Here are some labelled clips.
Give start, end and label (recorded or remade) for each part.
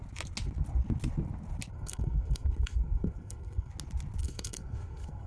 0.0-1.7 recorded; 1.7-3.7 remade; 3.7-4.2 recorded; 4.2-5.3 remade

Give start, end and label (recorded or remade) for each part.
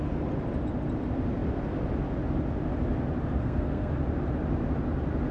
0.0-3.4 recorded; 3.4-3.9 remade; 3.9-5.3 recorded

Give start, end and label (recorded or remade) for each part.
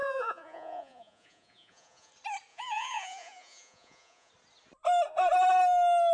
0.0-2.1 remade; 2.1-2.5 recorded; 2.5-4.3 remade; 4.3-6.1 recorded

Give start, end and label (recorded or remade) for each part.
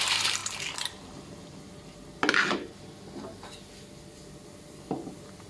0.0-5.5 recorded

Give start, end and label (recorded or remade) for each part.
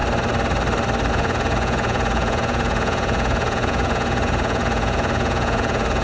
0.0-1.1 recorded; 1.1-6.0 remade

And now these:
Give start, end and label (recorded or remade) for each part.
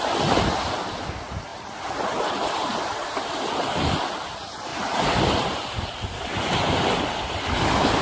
0.0-8.0 recorded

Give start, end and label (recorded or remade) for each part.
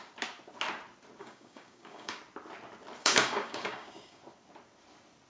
0.0-1.2 recorded; 1.2-2.2 remade; 2.2-3.0 recorded; 3.0-4.2 remade; 4.2-5.3 recorded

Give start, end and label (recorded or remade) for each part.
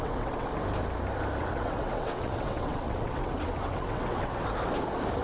0.0-0.5 remade; 0.5-1.4 recorded; 1.4-4.4 remade; 4.4-5.2 recorded